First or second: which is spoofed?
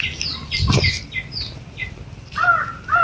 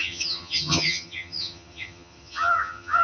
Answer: second